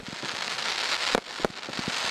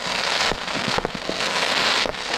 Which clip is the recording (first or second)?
first